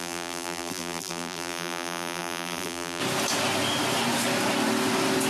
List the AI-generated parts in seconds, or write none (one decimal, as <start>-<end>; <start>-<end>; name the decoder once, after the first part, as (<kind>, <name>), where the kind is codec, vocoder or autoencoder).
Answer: 0.0-3.0 (vocoder, BigVGAN v2)